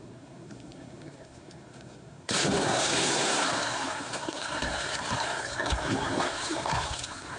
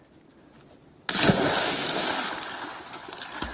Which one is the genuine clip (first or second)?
second